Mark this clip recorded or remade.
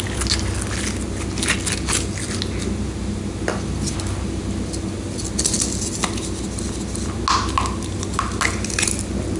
recorded